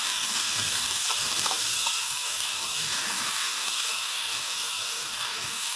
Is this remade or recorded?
remade